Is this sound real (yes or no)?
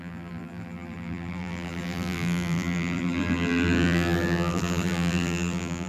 no